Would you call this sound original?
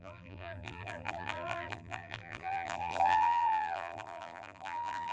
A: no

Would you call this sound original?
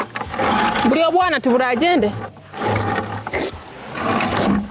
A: yes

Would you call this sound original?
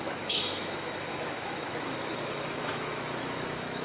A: no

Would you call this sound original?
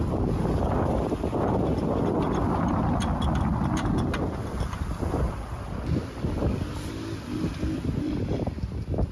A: no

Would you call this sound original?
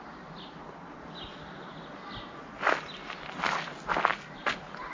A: yes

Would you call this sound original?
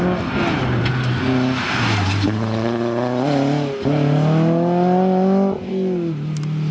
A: yes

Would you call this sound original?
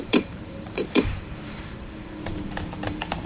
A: no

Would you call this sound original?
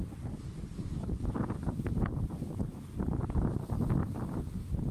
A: yes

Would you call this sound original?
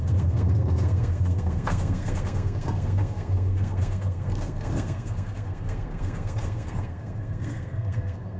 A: no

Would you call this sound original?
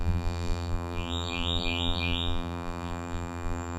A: no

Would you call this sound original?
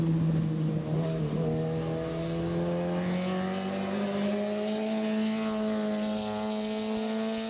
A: yes